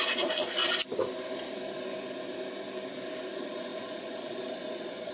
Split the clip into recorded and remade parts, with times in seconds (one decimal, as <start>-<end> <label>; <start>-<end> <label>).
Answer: 0.0-0.6 remade; 0.6-3.3 recorded; 3.3-5.1 remade